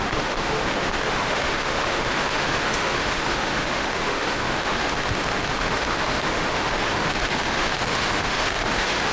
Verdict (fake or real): fake